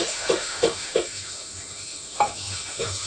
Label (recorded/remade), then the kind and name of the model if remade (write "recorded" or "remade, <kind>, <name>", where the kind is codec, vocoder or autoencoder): remade, autoencoder, DAC-VAE